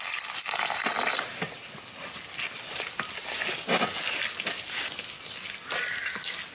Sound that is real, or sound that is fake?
real